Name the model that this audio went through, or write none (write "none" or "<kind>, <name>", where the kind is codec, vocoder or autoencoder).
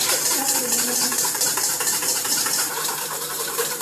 vocoder, BigVGAN v2